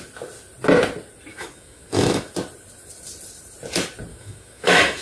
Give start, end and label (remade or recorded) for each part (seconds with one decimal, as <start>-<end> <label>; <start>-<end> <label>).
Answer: 0.0-1.3 recorded; 1.3-2.3 remade; 2.3-4.1 recorded; 4.1-5.0 remade